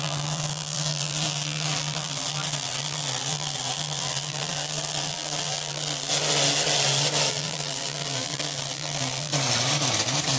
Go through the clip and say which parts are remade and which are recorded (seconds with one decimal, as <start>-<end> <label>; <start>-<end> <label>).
0.0-6.1 remade; 6.1-7.3 recorded; 7.3-9.3 remade; 9.3-10.4 recorded

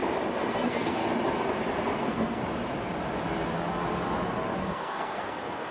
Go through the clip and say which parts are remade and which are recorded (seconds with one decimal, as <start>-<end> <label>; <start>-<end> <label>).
0.0-0.5 recorded; 0.5-1.0 remade; 1.0-2.0 recorded; 2.0-2.4 remade; 2.4-4.6 recorded; 4.6-5.7 remade

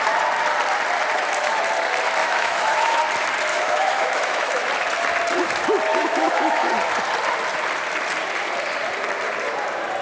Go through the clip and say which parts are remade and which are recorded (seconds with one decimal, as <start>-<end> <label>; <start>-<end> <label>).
0.0-2.2 recorded; 2.2-3.0 remade; 3.0-3.5 recorded; 3.5-4.7 remade; 4.7-5.9 recorded; 5.9-6.7 remade; 6.7-10.0 recorded